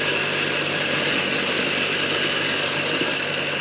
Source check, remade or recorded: recorded